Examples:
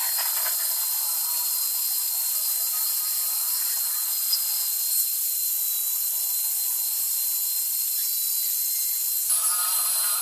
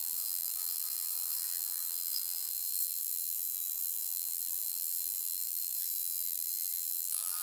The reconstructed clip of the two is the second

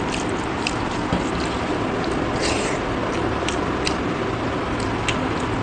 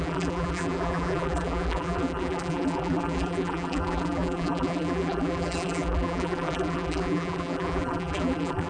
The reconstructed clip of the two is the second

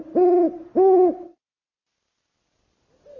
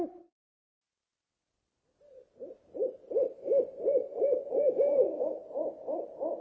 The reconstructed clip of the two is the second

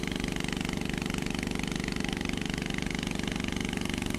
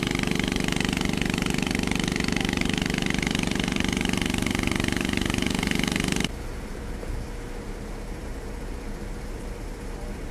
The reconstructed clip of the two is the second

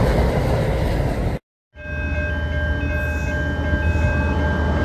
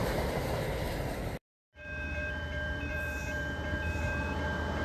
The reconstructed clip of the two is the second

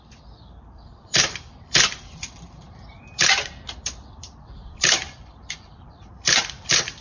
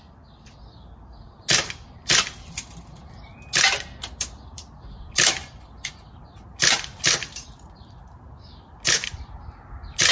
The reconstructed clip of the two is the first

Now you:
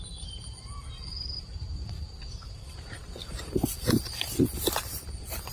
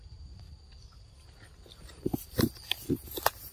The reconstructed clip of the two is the first